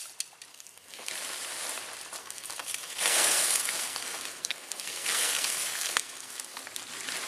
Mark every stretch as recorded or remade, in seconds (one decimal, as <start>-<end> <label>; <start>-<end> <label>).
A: 0.0-0.5 recorded; 0.5-1.1 remade; 1.1-2.2 recorded; 2.2-6.6 remade; 6.6-7.3 recorded